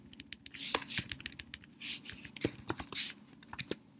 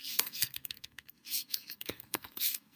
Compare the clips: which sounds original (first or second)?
first